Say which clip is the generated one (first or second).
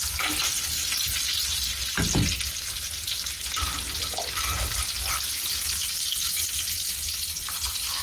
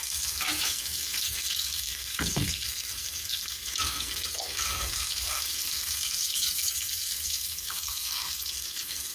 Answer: second